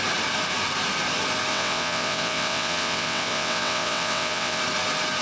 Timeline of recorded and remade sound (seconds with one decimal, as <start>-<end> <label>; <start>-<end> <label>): 0.0-1.5 recorded; 1.5-4.6 remade; 4.6-5.2 recorded